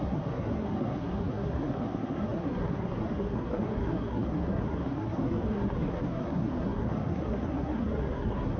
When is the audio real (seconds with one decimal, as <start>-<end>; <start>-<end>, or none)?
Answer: none